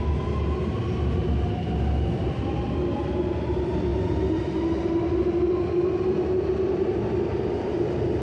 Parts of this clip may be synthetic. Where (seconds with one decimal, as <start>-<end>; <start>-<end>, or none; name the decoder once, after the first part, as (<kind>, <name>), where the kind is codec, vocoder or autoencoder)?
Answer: none